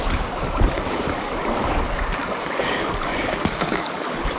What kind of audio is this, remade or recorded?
remade